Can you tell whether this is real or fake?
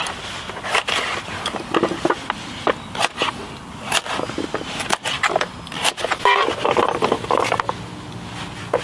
real